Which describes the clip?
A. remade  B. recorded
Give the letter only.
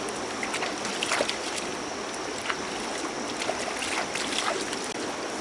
B